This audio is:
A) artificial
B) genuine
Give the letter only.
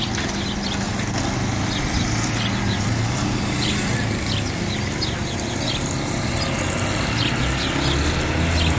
B